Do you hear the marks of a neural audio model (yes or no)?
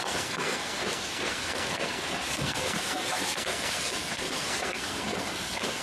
yes